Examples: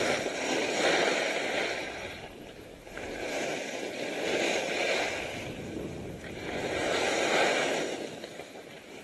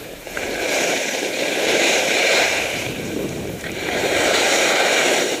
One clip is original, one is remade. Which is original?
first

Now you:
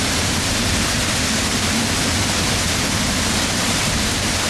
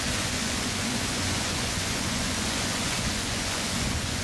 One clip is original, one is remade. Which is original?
first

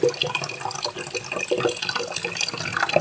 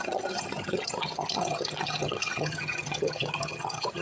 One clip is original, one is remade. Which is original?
first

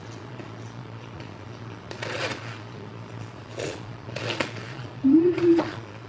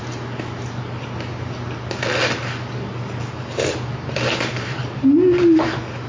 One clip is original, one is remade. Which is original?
second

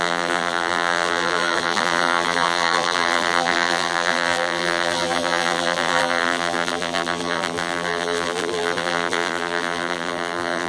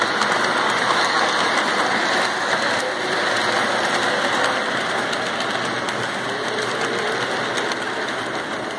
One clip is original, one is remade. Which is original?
second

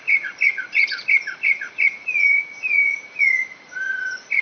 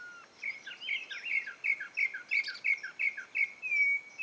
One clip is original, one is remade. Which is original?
second